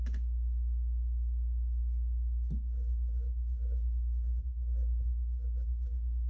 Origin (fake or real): real